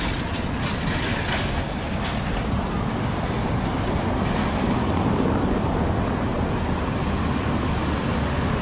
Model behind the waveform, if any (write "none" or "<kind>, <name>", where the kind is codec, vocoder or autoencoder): none